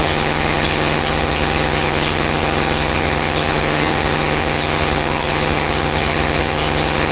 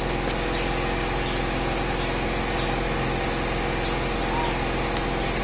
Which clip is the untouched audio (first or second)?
second